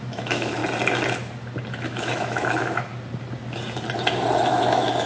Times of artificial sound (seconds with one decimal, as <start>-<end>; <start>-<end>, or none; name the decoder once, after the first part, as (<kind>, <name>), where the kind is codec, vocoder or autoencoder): 0.0-0.6 (autoencoder, DAC-VAE); 1.7-2.9; 4.5-5.1